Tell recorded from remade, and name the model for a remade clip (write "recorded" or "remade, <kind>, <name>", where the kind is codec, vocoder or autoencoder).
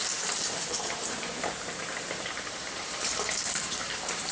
remade, vocoder, BigVGAN v2